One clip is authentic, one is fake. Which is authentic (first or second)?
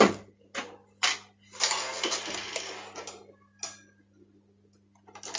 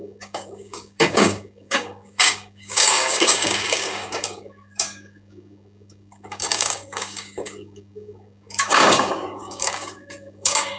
first